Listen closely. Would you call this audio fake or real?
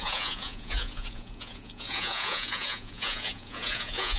fake